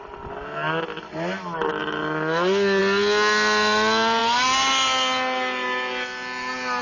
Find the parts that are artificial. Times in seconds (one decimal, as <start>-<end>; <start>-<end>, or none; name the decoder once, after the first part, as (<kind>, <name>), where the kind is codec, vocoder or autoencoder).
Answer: none